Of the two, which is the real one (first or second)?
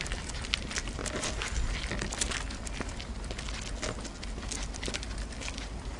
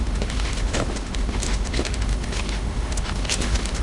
first